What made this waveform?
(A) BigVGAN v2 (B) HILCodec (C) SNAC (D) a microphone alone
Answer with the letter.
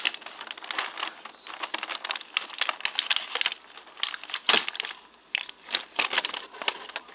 D